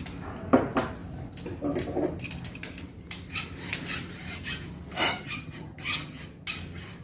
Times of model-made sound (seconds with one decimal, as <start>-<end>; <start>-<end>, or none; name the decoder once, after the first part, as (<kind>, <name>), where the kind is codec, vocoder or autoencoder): 5.1-6.2 (vocoder, HiFi-GAN)